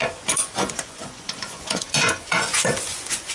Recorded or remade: remade